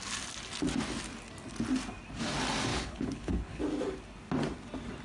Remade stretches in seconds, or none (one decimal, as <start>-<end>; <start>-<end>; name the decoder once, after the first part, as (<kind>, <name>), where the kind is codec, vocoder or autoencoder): 2.7-3.6 (codec, HILCodec)